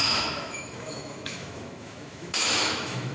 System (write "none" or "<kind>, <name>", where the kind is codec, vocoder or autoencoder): autoencoder, DAC-VAE